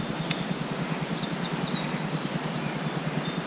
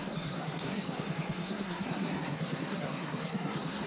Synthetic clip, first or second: second